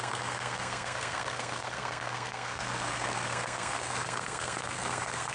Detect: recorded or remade remade